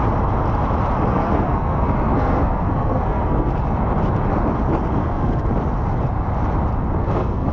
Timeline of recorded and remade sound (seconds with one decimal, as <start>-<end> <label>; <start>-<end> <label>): 0.0-1.1 recorded; 1.1-3.5 remade; 3.5-5.0 recorded; 5.0-5.5 remade; 5.5-7.0 recorded; 7.0-7.5 remade